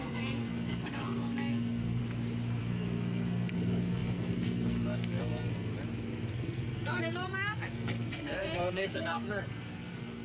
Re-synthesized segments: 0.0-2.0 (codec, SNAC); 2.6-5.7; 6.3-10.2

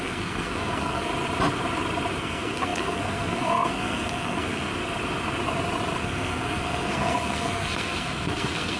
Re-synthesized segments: 0.0-1.1 (codec, SNAC); 2.2-4.7; 6.0-8.8

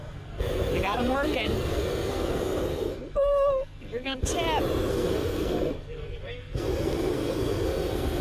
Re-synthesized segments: 0.0-4.3 (codec, SNAC); 4.9-8.2

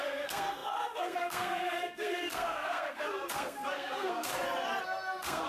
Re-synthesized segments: 0.0-4.3 (codec, SNAC); 4.8-5.5

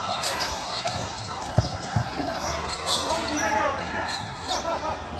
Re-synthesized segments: 0.0-3.1 (codec, SNAC); 3.8-4.5

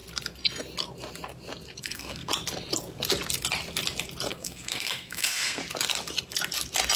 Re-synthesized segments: 1.8-2.3 (codec, SNAC); 4.3-5.6

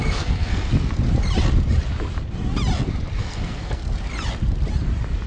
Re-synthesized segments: 0.0-0.7 (codec, SNAC); 3.2-3.8